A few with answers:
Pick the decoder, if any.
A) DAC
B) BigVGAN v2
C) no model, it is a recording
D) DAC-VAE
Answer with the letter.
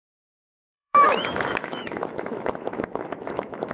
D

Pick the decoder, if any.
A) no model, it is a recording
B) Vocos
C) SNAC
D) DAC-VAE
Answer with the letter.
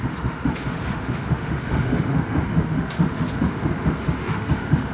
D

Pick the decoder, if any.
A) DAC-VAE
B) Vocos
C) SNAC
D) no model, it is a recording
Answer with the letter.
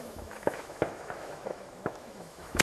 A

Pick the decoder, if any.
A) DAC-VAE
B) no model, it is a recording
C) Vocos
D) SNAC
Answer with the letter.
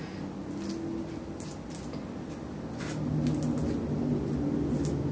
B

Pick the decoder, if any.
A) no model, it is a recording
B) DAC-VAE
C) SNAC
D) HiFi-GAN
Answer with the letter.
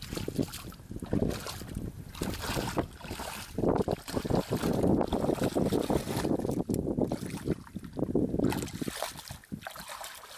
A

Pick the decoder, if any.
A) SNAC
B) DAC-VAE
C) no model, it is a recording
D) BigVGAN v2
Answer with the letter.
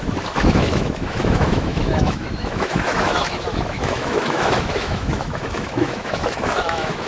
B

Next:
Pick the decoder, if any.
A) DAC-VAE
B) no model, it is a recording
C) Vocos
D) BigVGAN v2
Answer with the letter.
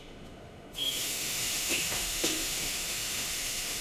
A